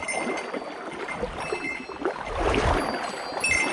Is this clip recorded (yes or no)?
yes